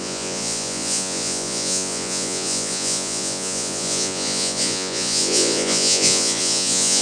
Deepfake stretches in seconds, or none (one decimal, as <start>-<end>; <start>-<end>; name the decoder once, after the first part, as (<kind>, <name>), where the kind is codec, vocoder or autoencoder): 0.0-7.0 (vocoder, Vocos)